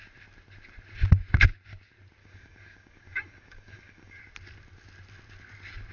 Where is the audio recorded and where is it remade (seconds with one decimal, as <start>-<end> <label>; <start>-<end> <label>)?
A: 0.0-2.2 recorded; 2.2-4.2 remade; 4.2-5.9 recorded

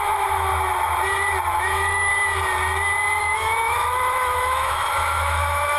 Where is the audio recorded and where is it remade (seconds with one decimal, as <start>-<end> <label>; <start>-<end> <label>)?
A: 0.0-0.5 remade; 0.5-1.5 recorded; 1.5-2.1 remade; 2.1-3.2 recorded; 3.2-5.8 remade

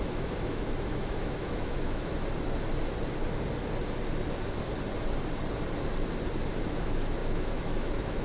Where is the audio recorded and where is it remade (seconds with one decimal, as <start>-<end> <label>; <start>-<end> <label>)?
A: 0.0-2.1 remade; 2.1-6.6 recorded; 6.6-8.2 remade